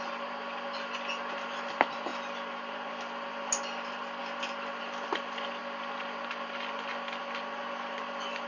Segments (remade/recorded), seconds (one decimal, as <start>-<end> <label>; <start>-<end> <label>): 0.0-8.5 recorded